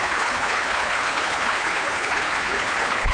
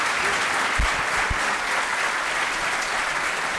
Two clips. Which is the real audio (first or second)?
second